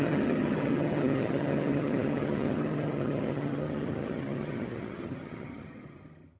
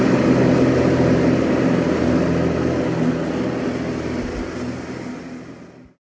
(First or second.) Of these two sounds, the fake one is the first